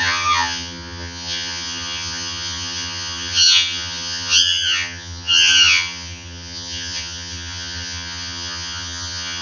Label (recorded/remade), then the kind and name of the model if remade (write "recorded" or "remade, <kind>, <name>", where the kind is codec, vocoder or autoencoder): remade, vocoder, HiFi-GAN